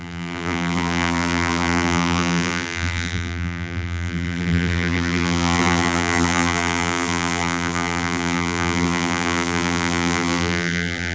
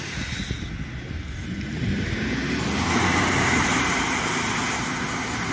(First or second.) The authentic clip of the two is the second